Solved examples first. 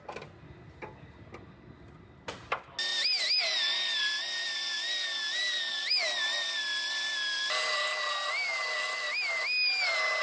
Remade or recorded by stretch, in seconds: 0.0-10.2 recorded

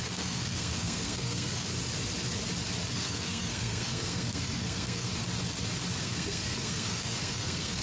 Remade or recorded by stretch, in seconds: 0.0-1.7 remade; 1.7-2.9 recorded; 2.9-5.1 remade; 5.1-6.0 recorded; 6.0-7.8 remade

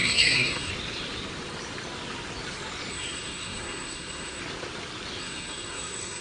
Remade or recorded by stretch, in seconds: 0.0-0.7 remade; 0.7-2.9 recorded; 2.9-4.4 remade; 4.4-5.2 recorded; 5.2-6.2 remade